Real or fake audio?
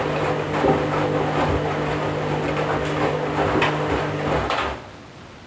real